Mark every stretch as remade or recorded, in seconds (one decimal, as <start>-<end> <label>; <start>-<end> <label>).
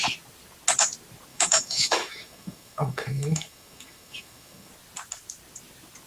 0.0-1.3 recorded; 1.3-4.7 remade; 4.7-6.1 recorded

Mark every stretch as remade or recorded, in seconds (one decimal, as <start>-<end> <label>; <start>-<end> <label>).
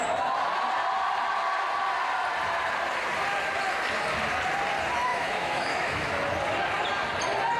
0.0-5.1 recorded; 5.1-6.2 remade; 6.2-7.6 recorded